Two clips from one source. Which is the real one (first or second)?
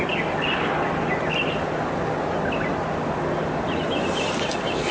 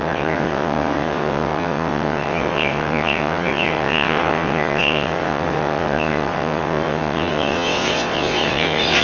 first